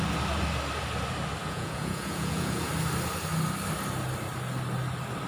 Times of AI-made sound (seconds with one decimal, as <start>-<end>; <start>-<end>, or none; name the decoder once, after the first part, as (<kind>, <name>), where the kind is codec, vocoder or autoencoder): 1.4-2.7 (vocoder, Vocos)